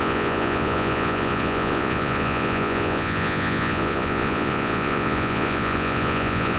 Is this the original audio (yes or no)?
no